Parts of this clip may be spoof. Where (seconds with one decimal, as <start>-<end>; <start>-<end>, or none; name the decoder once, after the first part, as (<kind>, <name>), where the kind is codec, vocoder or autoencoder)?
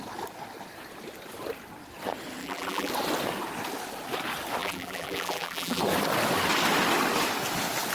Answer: 2.4-2.9 (vocoder, BigVGAN v2); 4.6-5.8